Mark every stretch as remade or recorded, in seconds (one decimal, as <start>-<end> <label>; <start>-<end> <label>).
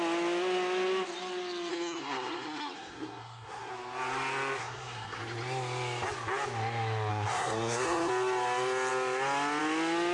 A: 0.0-1.7 recorded; 1.7-3.7 remade; 3.7-4.6 recorded; 4.6-5.2 remade; 5.2-7.1 recorded; 7.1-8.1 remade; 8.1-10.1 recorded